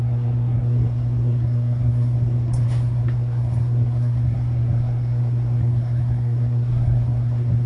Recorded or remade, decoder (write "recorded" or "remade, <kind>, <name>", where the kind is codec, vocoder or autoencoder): remade, codec, SNAC